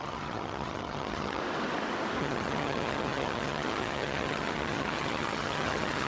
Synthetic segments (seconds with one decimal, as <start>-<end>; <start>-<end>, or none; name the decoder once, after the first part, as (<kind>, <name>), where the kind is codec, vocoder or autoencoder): 0.0-1.4 (vocoder, HiFi-GAN); 2.2-6.1